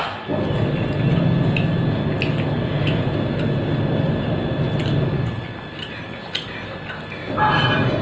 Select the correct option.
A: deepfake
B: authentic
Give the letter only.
B